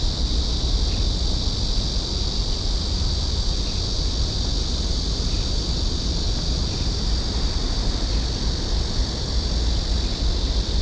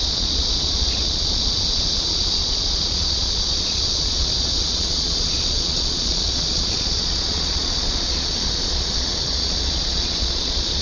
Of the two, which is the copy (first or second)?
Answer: second